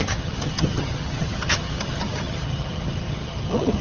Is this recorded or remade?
remade